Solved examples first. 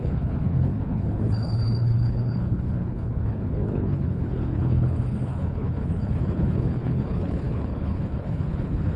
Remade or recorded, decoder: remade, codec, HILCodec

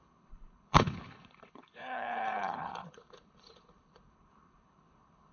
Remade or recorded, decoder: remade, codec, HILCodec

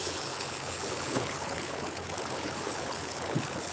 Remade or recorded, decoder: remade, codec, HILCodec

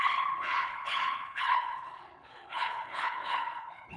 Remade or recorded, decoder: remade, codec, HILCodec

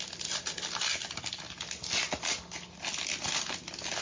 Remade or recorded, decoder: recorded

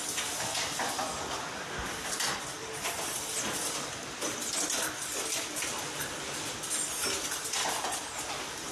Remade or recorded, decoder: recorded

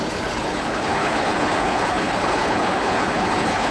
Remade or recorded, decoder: remade, codec, HILCodec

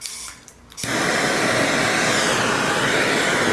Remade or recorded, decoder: recorded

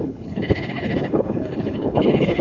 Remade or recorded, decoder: remade, codec, HILCodec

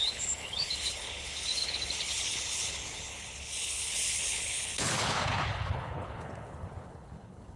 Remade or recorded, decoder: remade, codec, HILCodec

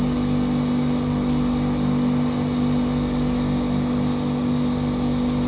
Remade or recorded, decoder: recorded